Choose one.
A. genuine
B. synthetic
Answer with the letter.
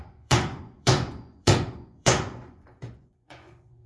B